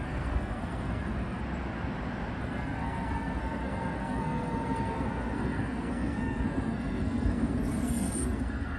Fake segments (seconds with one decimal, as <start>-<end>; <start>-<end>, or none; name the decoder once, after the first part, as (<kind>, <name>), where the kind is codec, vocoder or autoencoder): 0.0-1.4 (codec, SNAC); 2.4-8.8